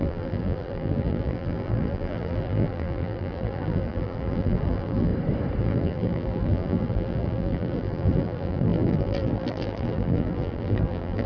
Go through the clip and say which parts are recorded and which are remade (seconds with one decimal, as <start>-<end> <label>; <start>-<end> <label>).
0.0-5.1 remade; 5.1-5.6 recorded; 5.6-11.3 remade